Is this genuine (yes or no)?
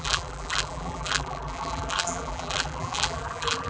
no